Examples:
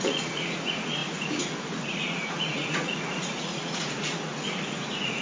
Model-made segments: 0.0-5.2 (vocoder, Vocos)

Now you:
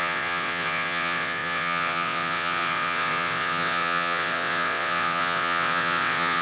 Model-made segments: 0.0-6.4 (vocoder, WaveNeXt)

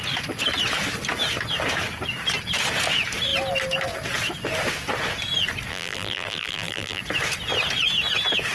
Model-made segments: 5.7-7.0 (vocoder, BigVGAN v2)

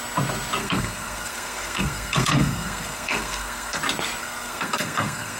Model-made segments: 0.6-3.8 (codec, SNAC); 4.2-5.4

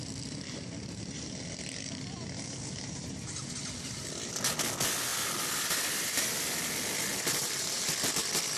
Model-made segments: 7.1-8.2 (vocoder, BigVGAN v2)

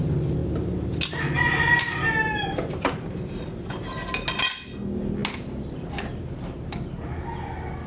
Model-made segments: none

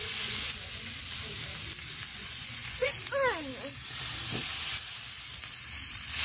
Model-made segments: 0.0-0.9 (vocoder, Vocos); 2.1-2.9

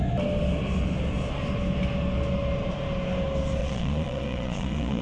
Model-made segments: 3.6-5.0 (vocoder, Vocos)